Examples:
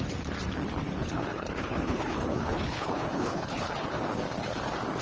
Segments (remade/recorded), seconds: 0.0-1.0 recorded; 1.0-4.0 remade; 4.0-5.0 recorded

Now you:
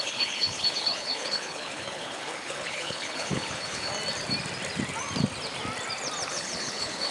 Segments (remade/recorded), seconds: 0.0-3.9 remade; 3.9-6.3 recorded; 6.3-7.1 remade

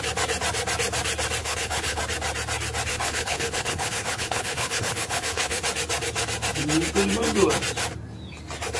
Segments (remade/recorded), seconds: 0.0-1.4 recorded; 1.4-2.0 remade; 2.0-2.9 recorded; 2.9-5.6 remade; 5.6-8.8 recorded

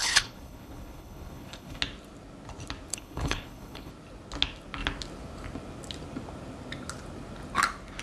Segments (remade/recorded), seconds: 0.0-1.8 remade; 1.8-2.9 recorded; 2.9-3.9 remade; 3.9-8.0 recorded

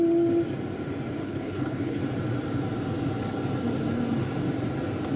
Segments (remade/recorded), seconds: 0.0-1.2 recorded; 1.2-2.0 remade; 2.0-5.2 recorded

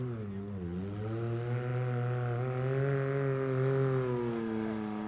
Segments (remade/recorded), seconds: 0.0-5.1 recorded